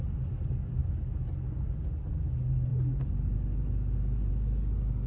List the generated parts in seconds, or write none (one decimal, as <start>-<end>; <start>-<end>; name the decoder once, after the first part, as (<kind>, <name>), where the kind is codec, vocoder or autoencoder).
none